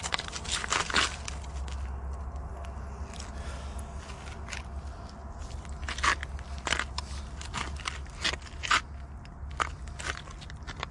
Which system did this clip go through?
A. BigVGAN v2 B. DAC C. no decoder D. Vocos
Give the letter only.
C